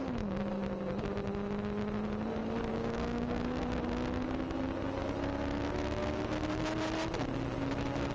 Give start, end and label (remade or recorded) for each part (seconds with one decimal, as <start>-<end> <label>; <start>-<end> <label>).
0.0-2.7 recorded; 2.7-3.6 remade; 3.6-8.1 recorded